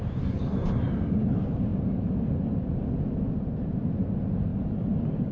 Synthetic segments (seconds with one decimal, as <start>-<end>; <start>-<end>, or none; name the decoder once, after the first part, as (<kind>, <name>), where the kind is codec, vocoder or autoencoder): none